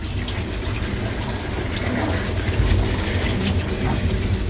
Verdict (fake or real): real